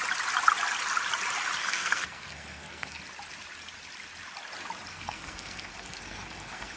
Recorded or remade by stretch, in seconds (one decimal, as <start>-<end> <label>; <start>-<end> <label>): 0.0-1.6 recorded; 1.6-3.0 remade; 3.0-4.9 recorded; 4.9-6.8 remade